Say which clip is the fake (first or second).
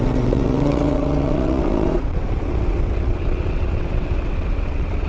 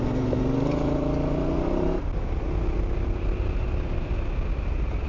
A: first